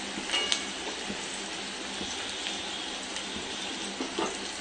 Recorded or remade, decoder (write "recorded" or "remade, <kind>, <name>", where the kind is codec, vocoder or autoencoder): recorded